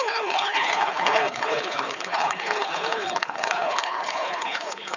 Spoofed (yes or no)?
yes